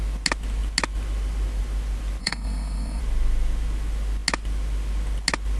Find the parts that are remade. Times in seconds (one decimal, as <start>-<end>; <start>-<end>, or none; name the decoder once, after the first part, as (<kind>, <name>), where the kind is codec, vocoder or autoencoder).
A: 2.2-3.0 (codec, SNAC)